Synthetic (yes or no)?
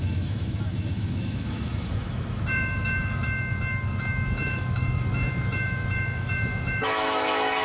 yes